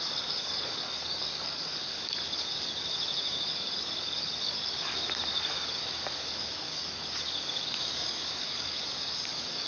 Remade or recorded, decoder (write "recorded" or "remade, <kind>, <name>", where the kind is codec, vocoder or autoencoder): remade, codec, DAC